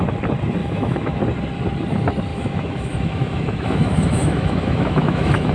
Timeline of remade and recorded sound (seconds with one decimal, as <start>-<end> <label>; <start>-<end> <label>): 0.0-0.6 recorded; 0.6-1.2 remade; 1.2-2.3 recorded; 2.3-5.5 remade